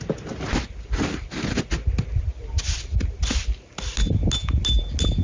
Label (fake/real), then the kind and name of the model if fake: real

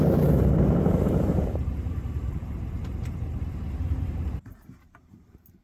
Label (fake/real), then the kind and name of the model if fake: fake, vocoder, BigVGAN v2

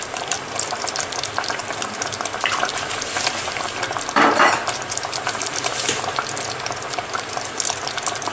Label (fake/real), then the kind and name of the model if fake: fake, vocoder, BigVGAN v2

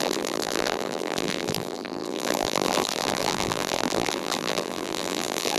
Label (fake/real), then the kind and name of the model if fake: fake, vocoder, BigVGAN v2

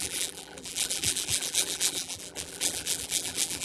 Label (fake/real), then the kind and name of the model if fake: fake, vocoder, BigVGAN v2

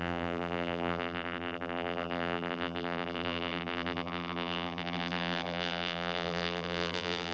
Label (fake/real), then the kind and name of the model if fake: fake, vocoder, BigVGAN v2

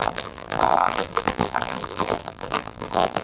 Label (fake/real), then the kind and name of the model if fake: fake, vocoder, BigVGAN v2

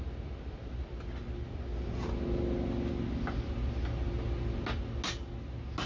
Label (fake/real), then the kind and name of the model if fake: real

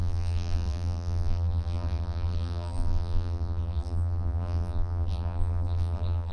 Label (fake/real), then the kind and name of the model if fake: fake, vocoder, BigVGAN v2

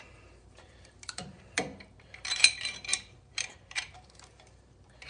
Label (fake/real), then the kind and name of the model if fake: fake, vocoder, BigVGAN v2